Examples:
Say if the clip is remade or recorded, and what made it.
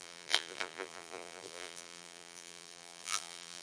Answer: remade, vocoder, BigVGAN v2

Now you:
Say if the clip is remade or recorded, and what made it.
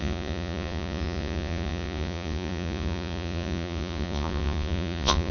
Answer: remade, vocoder, Vocos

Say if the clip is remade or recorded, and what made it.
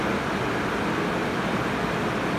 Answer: recorded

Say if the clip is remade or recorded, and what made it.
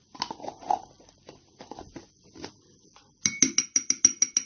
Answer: recorded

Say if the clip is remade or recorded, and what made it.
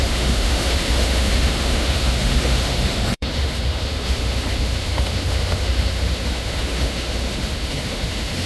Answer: remade, autoencoder, DAC-VAE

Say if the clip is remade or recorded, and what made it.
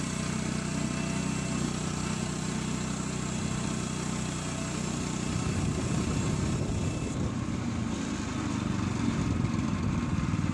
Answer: recorded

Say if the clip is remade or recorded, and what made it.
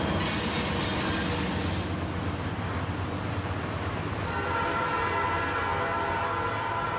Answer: recorded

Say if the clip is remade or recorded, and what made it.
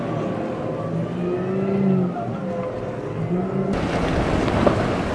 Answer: recorded